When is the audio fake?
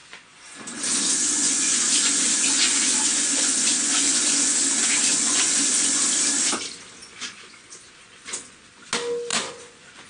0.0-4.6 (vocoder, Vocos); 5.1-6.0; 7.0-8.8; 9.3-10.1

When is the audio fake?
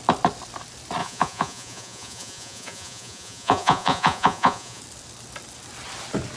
1.0-4.8 (vocoder, Vocos)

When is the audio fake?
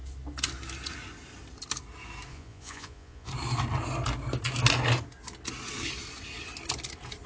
2.3-3.3 (vocoder, Vocos)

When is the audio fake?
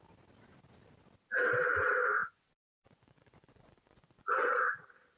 2.2-4.5 (vocoder, Vocos)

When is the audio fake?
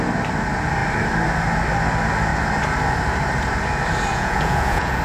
4.1-5.0 (vocoder, Vocos)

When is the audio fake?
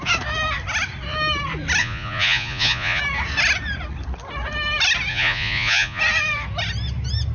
1.8-3.0 (vocoder, Vocos); 5.1-6.0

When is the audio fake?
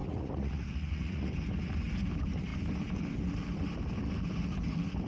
0.0-1.3 (vocoder, Vocos)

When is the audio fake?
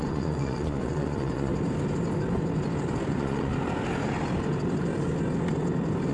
0.0-1.5 (vocoder, Vocos); 3.1-3.5